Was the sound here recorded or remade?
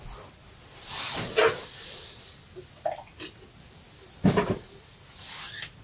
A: recorded